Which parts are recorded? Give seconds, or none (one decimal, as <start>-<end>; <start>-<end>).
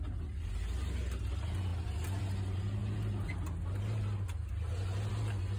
0.0-5.6